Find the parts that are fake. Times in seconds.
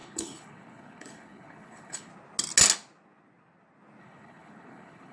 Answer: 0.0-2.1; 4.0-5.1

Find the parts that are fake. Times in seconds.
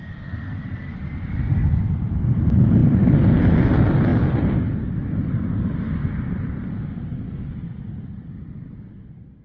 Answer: 0.8-1.3; 2.8-3.4; 5.0-5.8